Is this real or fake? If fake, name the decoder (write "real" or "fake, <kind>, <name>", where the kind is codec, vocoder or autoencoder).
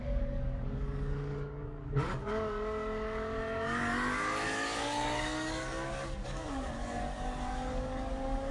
fake, codec, DAC